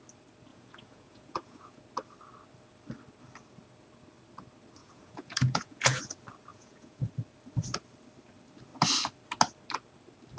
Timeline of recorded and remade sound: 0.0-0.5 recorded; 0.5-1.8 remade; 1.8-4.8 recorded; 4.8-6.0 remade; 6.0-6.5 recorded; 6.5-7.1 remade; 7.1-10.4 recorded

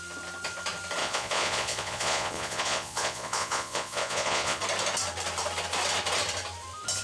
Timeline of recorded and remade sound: 0.0-1.0 recorded; 1.0-4.6 remade; 4.6-7.0 recorded

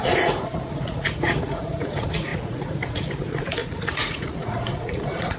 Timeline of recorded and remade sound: 0.0-5.4 remade

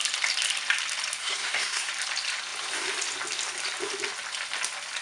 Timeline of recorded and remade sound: 0.0-1.2 recorded; 1.2-1.9 remade; 1.9-5.0 recorded

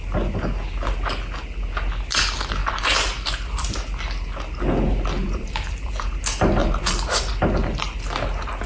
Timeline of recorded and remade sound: 0.0-2.6 recorded; 2.6-3.4 remade; 3.4-5.2 recorded; 5.2-6.1 remade; 6.1-6.6 recorded; 6.6-7.5 remade; 7.5-8.7 recorded

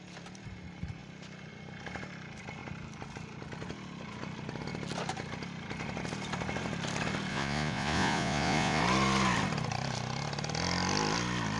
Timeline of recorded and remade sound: 0.0-7.3 recorded; 7.3-8.8 remade; 8.8-11.6 recorded

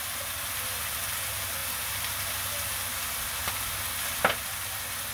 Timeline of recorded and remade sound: 0.0-5.1 recorded

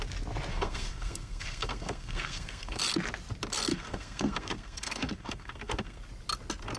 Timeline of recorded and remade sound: 0.0-0.5 recorded; 0.5-2.8 remade; 2.8-3.7 recorded; 3.7-6.0 remade; 6.0-6.8 recorded